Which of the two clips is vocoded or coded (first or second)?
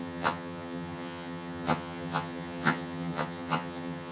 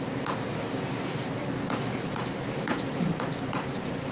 first